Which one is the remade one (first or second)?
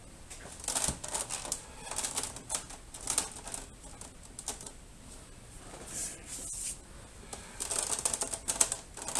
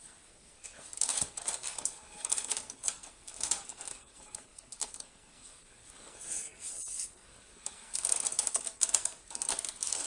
second